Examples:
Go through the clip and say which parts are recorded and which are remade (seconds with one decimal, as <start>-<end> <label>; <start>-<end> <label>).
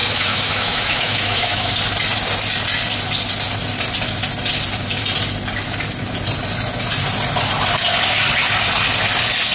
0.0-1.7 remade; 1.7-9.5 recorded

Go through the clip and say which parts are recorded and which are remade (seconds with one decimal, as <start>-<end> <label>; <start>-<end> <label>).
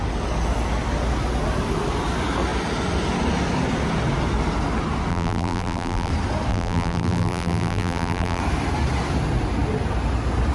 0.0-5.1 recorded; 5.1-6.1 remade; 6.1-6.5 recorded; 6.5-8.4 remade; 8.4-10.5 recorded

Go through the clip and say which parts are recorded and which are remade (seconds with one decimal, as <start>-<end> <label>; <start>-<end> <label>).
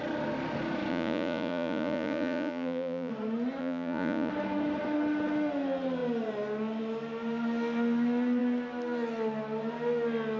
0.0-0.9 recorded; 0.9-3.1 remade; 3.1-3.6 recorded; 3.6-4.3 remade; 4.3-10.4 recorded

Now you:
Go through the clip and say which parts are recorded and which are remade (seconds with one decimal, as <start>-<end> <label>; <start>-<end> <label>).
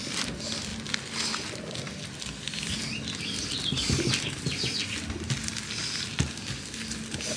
0.0-7.4 recorded